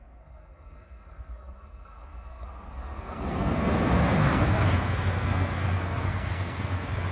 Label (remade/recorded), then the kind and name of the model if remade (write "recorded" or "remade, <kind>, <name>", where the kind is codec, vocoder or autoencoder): remade, codec, SNAC